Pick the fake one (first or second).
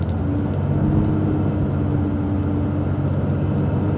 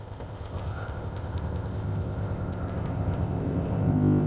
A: second